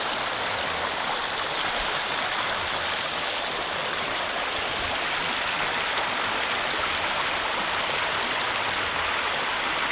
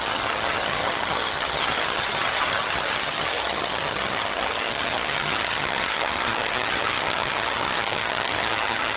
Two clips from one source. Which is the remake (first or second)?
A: second